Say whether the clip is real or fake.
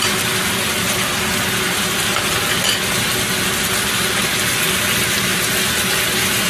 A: real